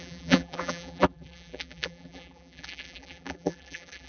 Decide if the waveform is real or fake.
fake